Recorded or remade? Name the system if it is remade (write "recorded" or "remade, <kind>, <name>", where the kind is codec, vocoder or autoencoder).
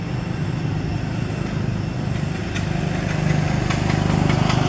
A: recorded